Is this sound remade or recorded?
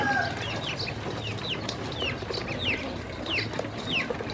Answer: recorded